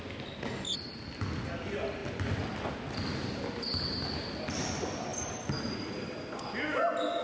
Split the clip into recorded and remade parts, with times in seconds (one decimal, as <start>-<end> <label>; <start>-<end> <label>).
0.0-7.2 recorded